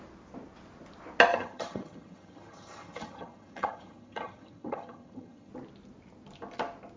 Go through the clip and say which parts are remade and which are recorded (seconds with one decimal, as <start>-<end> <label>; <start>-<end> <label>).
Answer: 0.0-1.3 recorded; 1.3-5.5 remade; 5.5-7.0 recorded